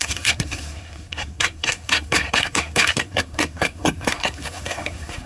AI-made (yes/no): yes